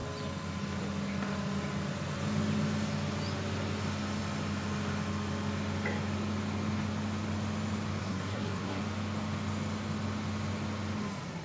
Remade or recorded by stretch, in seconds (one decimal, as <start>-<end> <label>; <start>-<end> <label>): 0.0-8.0 recorded; 8.0-8.8 remade; 8.8-11.4 recorded